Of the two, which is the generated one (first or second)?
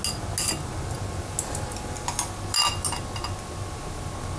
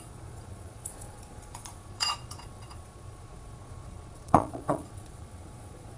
second